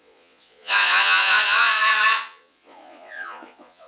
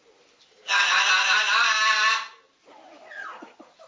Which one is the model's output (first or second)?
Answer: first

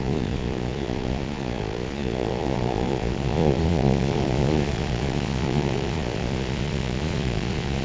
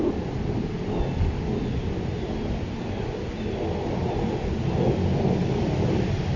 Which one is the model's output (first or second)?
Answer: first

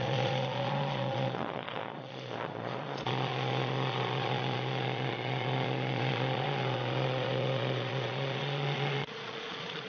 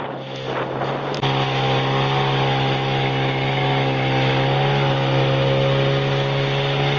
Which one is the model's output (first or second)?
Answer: first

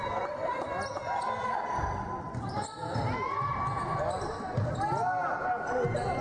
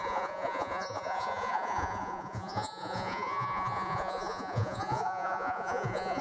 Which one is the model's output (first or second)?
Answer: second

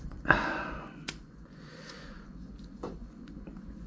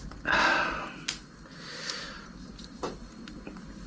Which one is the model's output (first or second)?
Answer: first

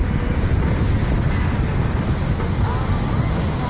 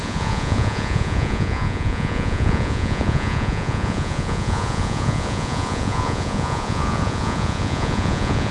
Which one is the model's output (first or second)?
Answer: second